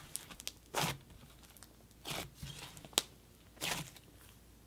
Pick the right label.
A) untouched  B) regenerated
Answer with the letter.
A